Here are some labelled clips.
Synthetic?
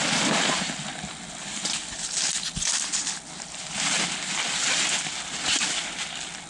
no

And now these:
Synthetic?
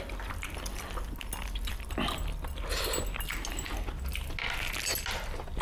no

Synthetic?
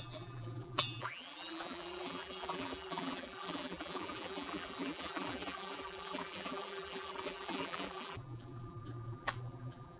yes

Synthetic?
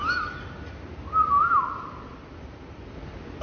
yes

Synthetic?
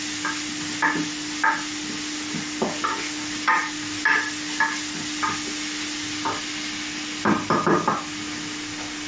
no